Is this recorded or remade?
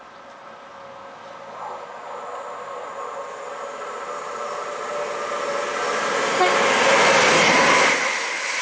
recorded